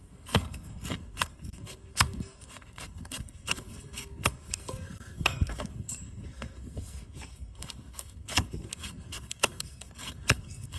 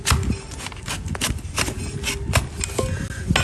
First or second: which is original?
second